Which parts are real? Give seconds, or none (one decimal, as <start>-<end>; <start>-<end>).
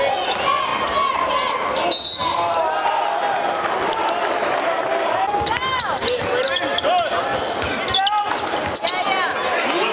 0.0-9.9